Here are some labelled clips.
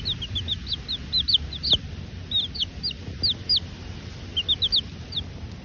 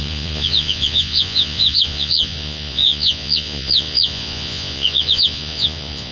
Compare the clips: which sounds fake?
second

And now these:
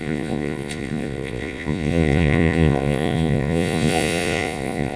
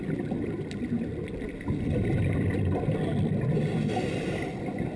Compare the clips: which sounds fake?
first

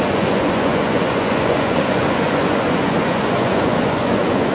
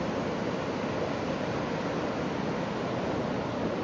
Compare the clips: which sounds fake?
first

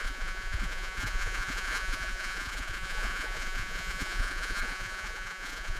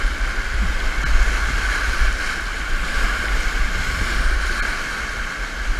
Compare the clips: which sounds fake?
first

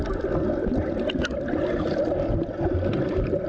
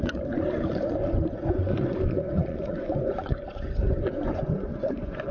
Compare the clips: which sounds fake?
second